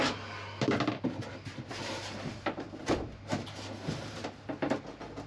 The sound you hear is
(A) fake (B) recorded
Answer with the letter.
B